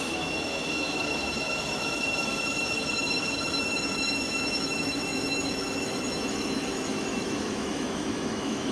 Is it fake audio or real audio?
fake